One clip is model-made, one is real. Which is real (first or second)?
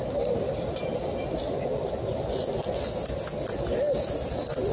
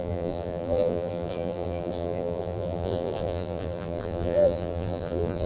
first